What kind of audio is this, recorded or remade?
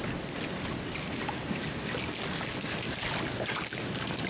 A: recorded